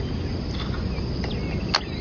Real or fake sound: real